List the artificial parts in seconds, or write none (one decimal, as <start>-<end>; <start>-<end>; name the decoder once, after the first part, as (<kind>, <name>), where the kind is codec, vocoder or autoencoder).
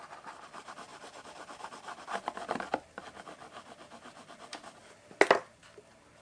none